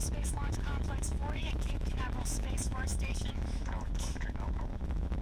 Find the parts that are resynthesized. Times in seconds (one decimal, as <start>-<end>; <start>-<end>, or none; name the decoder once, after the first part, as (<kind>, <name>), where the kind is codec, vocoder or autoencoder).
0.0-5.2 (autoencoder, DAC-VAE)